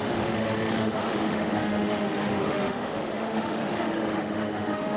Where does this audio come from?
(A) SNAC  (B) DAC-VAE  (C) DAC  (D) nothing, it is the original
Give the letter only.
B